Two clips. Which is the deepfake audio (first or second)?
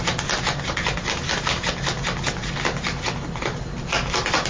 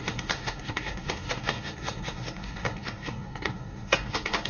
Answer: second